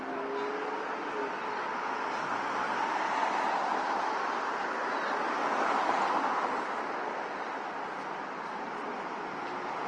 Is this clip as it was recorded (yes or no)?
yes